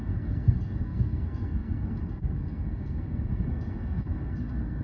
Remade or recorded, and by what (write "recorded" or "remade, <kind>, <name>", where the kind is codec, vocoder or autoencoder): remade, codec, SNAC